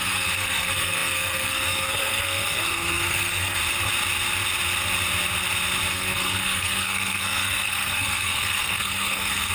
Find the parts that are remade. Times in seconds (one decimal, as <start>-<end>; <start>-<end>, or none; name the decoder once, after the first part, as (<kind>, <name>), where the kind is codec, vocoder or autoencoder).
0.0-3.6 (codec, SNAC); 5.9-9.5